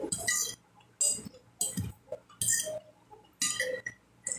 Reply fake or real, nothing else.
real